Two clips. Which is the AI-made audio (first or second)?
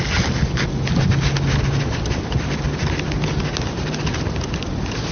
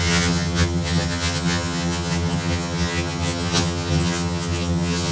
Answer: second